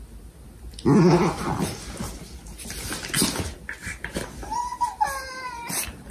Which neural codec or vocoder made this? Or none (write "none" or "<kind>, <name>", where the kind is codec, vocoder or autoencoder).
none